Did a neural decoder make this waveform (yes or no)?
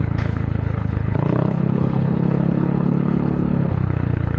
yes